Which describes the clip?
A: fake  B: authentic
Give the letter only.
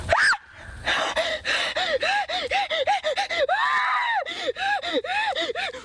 B